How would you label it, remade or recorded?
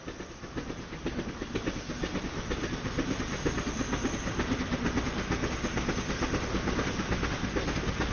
recorded